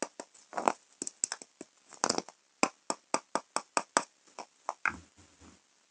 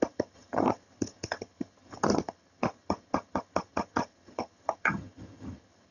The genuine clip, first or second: first